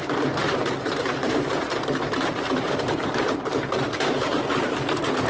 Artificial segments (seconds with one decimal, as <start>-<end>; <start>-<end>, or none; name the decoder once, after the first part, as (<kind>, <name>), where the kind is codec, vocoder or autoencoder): 0.0-5.3 (vocoder, BigVGAN v2)